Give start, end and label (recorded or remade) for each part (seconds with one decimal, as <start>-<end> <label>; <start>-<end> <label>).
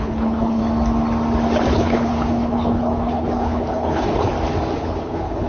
0.0-0.6 remade; 0.6-1.7 recorded; 1.7-4.3 remade; 4.3-4.8 recorded; 4.8-5.5 remade